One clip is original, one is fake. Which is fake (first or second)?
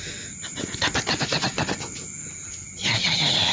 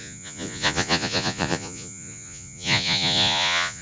second